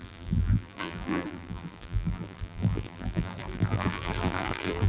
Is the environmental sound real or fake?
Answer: fake